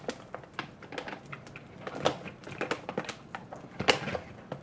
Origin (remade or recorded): recorded